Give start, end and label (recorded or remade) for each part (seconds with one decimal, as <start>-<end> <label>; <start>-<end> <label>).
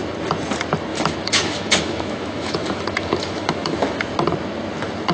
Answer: 0.0-0.9 recorded; 0.9-4.0 remade; 4.0-5.1 recorded